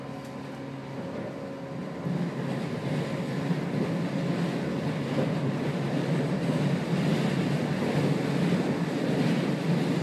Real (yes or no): yes